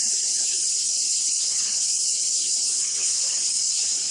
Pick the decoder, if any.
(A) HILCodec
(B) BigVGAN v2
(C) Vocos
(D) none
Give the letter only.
A